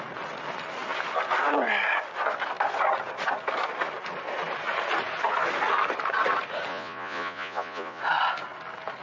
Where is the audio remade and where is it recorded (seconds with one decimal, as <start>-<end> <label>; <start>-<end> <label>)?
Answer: 0.0-6.7 recorded; 6.7-8.0 remade; 8.0-9.0 recorded